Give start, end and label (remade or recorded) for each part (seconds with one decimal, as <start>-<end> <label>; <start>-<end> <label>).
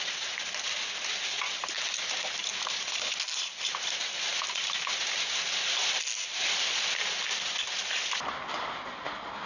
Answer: 0.0-9.5 recorded